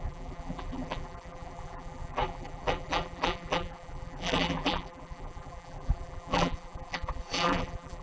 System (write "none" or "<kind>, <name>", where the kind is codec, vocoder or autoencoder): vocoder, BigVGAN v2